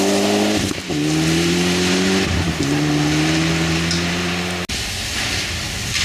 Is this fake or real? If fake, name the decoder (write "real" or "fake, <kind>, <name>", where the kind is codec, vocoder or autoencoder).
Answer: real